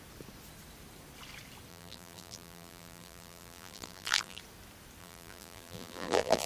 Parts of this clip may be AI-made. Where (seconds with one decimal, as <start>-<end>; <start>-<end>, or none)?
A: 1.7-4.4; 5.0-6.5